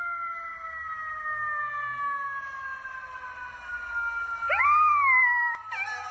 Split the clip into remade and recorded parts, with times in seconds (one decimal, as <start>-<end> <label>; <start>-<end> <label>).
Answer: 0.0-6.1 recorded